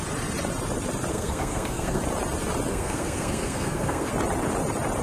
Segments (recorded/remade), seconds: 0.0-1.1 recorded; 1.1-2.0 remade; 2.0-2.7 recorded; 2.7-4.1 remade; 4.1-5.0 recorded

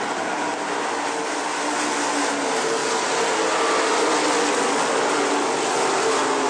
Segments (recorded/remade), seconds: 0.0-6.5 recorded

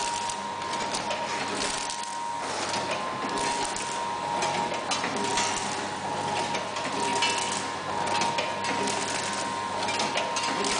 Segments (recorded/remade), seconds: 0.0-10.8 recorded

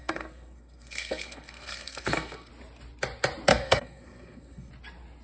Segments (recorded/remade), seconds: 0.0-2.5 remade; 2.5-3.5 recorded; 3.5-4.7 remade; 4.7-5.2 recorded